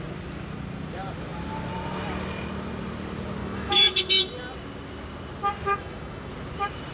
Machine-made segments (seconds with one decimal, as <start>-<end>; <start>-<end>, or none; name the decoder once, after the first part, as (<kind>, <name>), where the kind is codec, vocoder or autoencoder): 3.4-4.2 (autoencoder, DAC-VAE); 5.7-6.3